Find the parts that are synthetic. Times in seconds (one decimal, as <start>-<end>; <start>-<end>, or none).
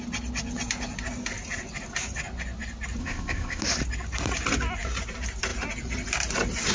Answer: 3.0-3.6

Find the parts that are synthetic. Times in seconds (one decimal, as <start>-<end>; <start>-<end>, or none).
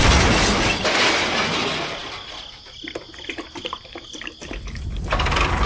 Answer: none